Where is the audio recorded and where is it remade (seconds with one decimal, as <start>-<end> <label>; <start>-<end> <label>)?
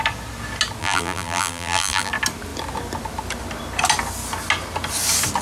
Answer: 0.0-0.8 recorded; 0.8-2.1 remade; 2.1-5.4 recorded